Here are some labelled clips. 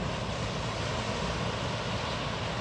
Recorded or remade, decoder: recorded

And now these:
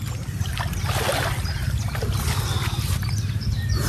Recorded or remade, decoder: recorded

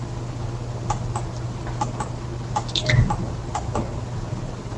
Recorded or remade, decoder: recorded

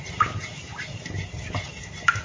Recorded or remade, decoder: recorded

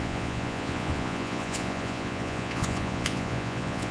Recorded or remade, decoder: remade, vocoder, Vocos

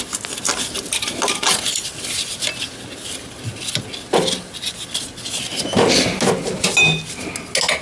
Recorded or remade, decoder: recorded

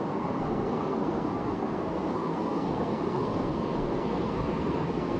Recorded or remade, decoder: remade, codec, SNAC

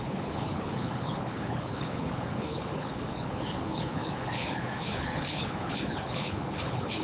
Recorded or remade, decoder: remade, codec, HILCodec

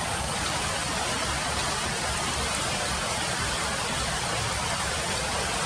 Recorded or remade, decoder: recorded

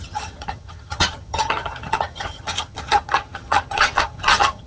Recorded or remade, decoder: remade, vocoder, HiFi-GAN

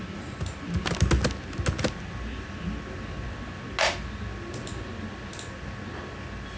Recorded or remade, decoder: recorded